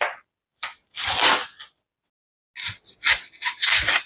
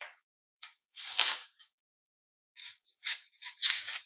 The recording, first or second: first